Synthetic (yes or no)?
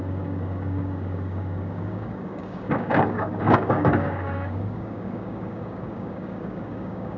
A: yes